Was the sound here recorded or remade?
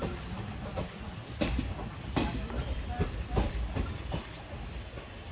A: recorded